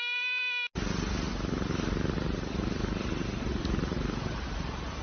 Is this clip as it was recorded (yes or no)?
yes